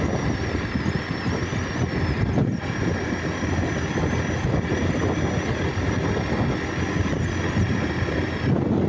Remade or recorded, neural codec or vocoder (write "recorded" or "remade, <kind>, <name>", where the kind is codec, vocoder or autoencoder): recorded